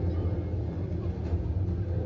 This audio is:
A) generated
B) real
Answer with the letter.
B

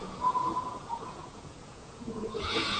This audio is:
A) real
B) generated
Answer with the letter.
B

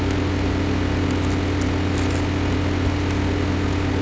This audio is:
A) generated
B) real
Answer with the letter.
B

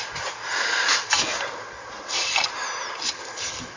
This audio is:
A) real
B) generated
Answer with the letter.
A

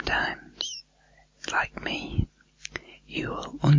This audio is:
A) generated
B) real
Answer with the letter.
B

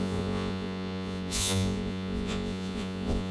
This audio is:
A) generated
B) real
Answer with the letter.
A